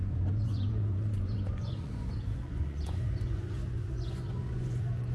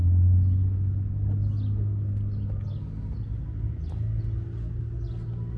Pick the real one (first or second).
second